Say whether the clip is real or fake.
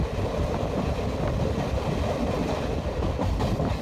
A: real